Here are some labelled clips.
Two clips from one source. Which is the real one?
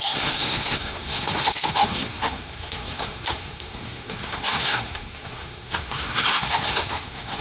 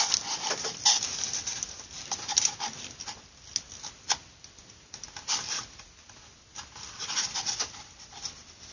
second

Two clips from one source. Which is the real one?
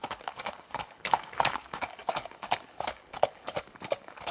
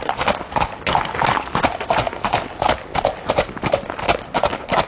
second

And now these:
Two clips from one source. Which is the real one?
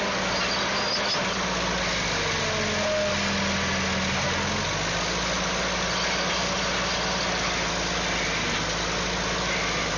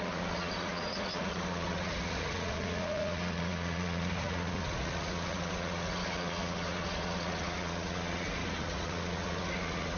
first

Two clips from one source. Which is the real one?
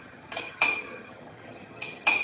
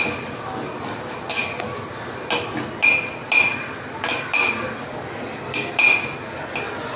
second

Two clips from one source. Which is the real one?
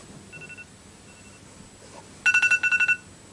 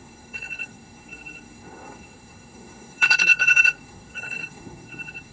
first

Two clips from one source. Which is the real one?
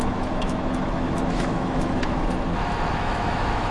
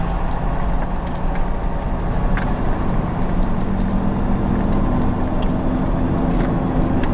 second